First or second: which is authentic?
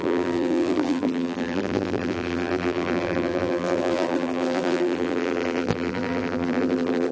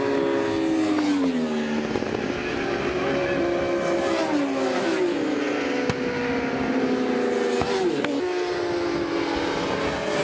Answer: second